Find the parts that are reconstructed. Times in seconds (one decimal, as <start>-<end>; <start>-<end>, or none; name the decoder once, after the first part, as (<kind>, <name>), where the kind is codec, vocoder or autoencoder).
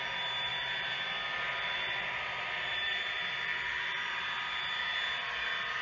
none